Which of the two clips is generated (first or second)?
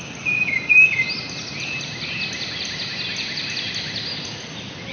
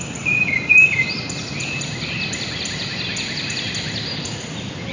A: second